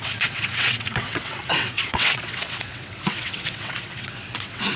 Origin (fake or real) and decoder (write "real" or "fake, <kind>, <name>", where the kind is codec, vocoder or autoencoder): fake, vocoder, WaveNeXt